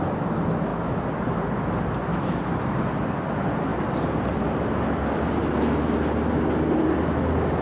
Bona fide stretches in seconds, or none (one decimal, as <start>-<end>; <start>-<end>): 0.0-2.1; 2.7-3.7; 5.6-7.6